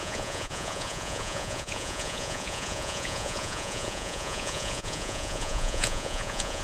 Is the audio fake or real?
fake